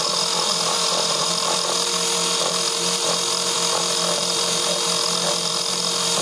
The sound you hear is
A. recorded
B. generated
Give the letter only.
B